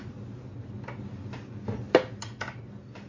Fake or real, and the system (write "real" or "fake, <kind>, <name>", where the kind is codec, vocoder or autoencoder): real